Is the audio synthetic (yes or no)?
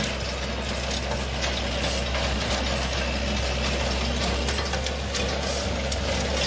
no